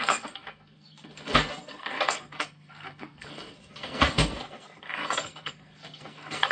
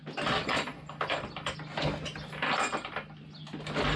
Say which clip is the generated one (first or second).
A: first